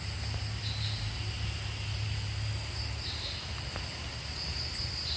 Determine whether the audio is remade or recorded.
recorded